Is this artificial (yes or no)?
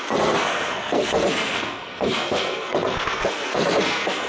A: yes